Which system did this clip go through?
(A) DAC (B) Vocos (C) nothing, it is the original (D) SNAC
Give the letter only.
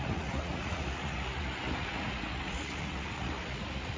B